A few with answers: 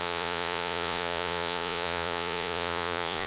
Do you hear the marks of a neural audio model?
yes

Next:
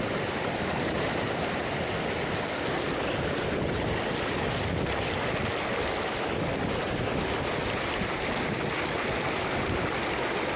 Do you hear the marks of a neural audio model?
no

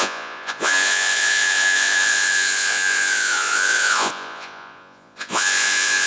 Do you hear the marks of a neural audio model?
yes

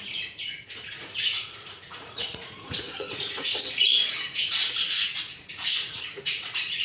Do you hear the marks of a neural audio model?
yes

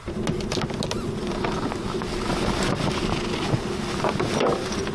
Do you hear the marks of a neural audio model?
no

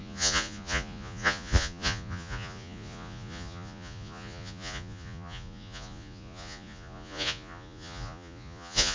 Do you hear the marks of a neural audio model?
yes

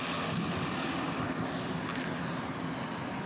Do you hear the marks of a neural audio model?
no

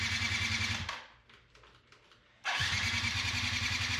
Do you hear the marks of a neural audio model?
no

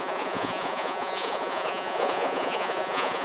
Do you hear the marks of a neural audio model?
yes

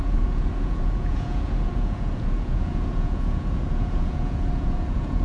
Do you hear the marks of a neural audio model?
yes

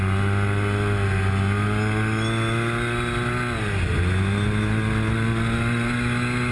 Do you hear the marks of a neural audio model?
no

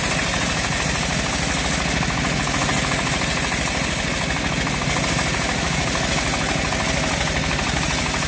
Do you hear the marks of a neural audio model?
no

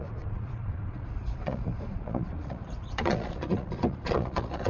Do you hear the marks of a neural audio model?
yes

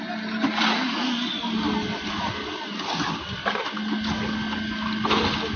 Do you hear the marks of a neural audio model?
no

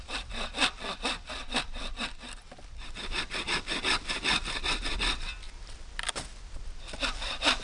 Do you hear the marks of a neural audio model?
no